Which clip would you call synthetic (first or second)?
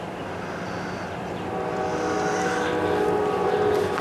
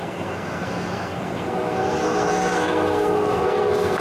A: second